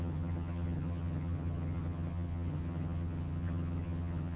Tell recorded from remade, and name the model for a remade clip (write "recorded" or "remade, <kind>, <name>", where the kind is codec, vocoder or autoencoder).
remade, vocoder, HiFi-GAN